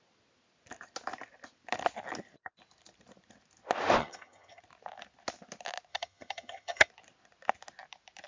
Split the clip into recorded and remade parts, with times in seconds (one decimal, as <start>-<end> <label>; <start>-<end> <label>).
0.0-4.0 recorded; 4.0-4.6 remade; 4.6-5.9 recorded; 5.9-6.9 remade; 6.9-8.3 recorded